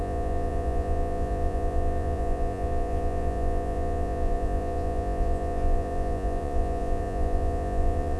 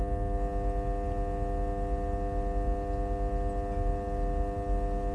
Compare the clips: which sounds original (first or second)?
second